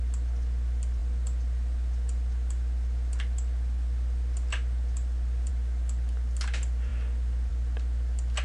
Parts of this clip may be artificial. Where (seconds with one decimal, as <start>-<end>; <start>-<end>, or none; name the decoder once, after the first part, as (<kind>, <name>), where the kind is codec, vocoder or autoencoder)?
1.0-5.5 (vocoder, BigVGAN v2); 6.9-7.5